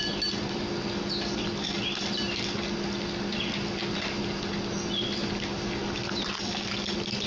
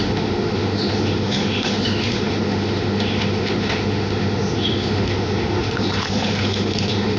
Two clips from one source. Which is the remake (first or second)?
second